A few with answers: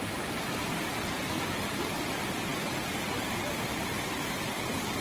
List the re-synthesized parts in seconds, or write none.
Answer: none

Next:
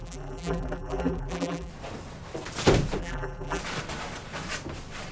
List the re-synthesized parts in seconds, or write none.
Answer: 0.0-1.7 (vocoder, BigVGAN v2); 3.0-3.6

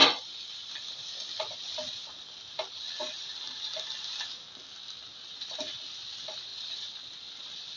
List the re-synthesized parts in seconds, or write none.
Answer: none

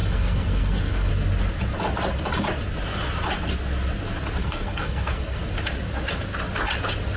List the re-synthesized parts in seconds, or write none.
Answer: 0.0-1.1 (codec, SNAC); 4.4-5.4

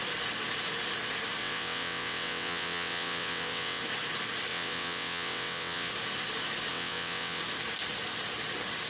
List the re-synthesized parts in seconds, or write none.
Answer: 1.4-3.8 (vocoder, WaveNeXt); 4.5-5.9; 6.7-7.4

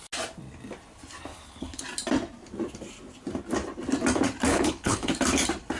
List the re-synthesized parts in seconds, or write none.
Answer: 1.3-1.8 (codec, HILCodec); 4.5-5.1

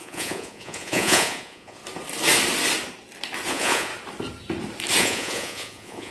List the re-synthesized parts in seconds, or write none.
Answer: 0.0-1.8 (vocoder, Vocos); 3.5-3.9; 5.0-6.1